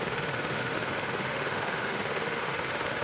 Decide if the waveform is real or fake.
fake